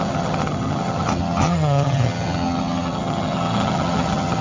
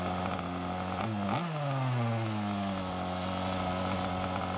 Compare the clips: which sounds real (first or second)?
second